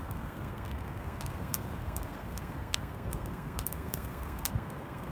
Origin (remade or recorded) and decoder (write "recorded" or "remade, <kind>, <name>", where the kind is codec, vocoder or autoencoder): remade, codec, SNAC